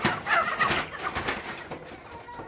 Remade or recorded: recorded